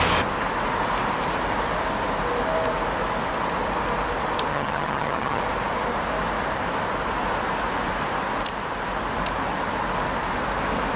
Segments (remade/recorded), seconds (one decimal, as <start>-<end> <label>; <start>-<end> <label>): 0.0-4.5 recorded; 4.5-5.4 remade; 5.4-11.0 recorded